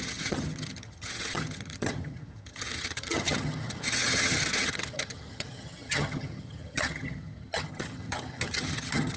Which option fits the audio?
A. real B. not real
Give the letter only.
B